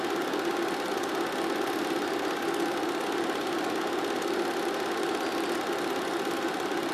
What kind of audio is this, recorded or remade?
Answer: recorded